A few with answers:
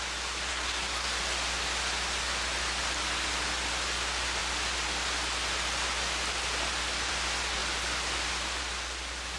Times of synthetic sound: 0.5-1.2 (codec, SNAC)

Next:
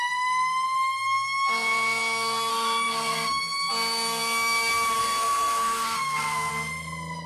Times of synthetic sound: 2.5-3.4 (codec, SNAC); 5.0-6.5

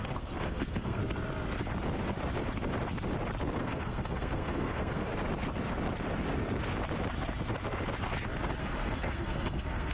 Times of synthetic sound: 0.0-1.0 (codec, SNAC); 3.6-5.1; 8.6-9.9

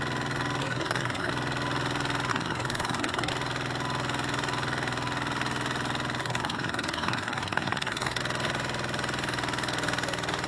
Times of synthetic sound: 0.6-1.3 (codec, SNAC); 2.3-3.3; 6.2-8.2